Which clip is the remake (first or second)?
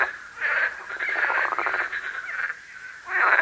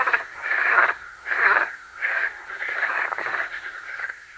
second